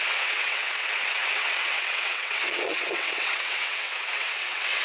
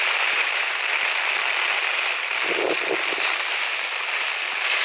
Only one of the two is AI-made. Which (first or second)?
first